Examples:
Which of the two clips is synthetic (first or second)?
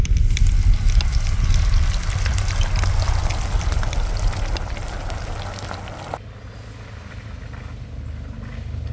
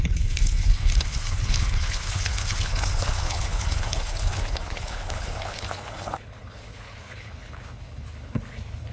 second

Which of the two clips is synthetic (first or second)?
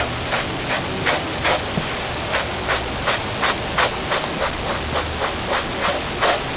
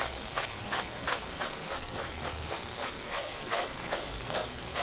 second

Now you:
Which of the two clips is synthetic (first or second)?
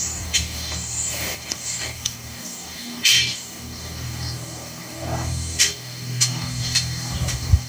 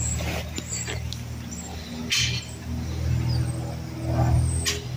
first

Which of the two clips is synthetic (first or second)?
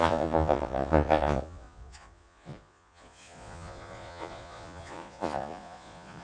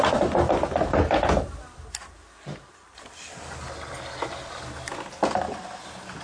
first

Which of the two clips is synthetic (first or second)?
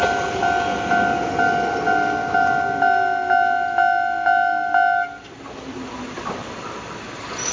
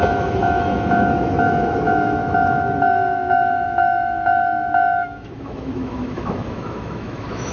second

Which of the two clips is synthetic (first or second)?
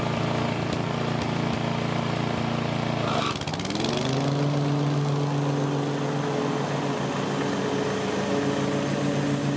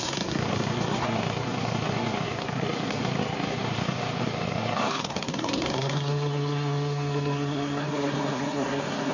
second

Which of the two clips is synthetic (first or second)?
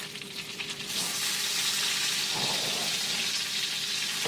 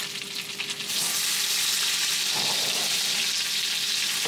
first